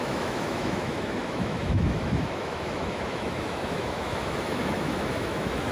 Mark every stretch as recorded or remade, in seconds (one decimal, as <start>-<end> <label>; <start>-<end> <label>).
0.0-5.7 remade